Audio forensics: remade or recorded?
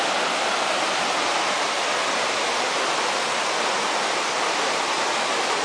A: recorded